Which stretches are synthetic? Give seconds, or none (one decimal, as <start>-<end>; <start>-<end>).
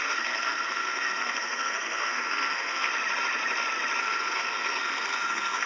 0.0-2.9; 4.0-5.7